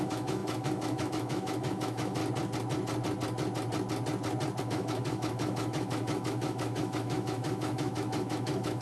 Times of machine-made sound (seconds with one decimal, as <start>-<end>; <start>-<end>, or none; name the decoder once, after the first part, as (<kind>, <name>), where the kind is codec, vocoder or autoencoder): 0.0-2.2 (autoencoder, DAC-VAE); 4.6-8.8